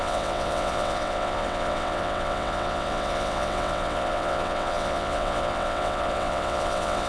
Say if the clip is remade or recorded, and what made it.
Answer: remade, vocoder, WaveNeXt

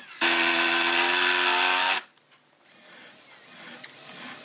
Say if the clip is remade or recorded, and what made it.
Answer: recorded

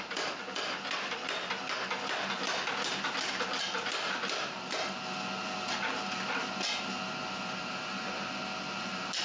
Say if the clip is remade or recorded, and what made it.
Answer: recorded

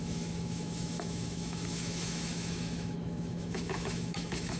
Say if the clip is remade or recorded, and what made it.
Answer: remade, autoencoder, DAC-VAE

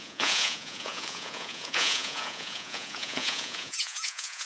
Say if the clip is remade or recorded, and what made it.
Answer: remade, vocoder, Vocos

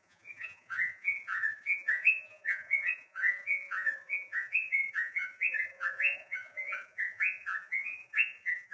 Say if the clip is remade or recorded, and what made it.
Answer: remade, vocoder, Vocos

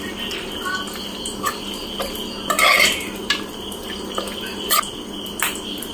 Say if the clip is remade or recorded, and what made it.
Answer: recorded